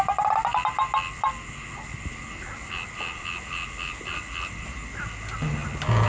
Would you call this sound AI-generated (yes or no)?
no